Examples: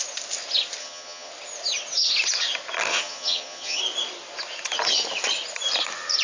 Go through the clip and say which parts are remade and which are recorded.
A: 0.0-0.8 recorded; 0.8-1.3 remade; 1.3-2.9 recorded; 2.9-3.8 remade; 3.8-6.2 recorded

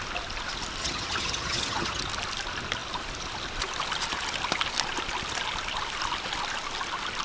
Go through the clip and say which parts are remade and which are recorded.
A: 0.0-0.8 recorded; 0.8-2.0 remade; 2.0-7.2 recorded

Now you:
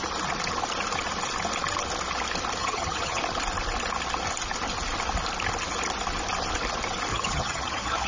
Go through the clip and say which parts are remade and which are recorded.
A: 0.0-2.6 recorded; 2.6-3.2 remade; 3.2-7.1 recorded; 7.1-8.1 remade

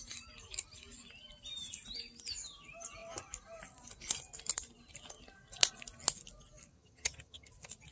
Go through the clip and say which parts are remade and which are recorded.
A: 0.0-6.7 recorded; 6.7-7.5 remade; 7.5-7.9 recorded